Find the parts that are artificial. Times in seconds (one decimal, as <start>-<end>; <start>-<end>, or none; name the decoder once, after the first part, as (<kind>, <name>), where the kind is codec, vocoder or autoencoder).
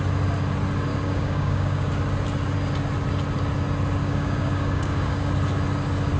0.9-1.9 (codec, DAC); 4.0-5.3